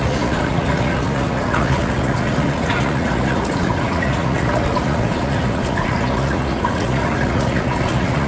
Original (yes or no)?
no